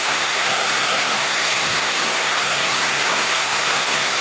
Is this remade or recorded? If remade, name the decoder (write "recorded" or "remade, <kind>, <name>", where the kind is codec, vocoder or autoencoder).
remade, codec, SNAC